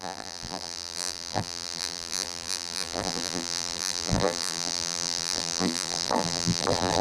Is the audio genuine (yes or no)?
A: no